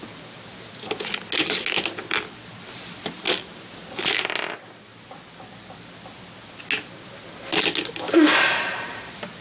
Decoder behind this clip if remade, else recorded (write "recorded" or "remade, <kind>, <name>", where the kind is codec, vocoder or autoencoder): recorded